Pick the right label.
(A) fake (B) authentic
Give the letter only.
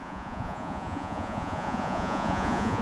A